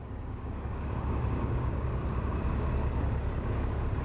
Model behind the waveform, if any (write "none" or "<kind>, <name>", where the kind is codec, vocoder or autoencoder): codec, DAC